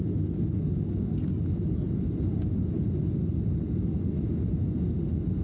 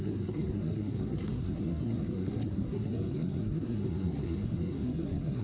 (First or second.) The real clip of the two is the first